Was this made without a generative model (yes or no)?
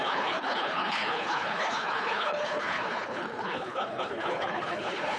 no